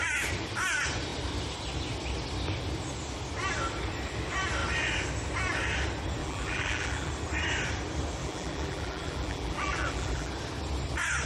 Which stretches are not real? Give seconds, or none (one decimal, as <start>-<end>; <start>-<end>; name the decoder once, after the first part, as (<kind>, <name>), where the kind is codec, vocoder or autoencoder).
6.2-7.1 (vocoder, BigVGAN v2); 8.2-10.3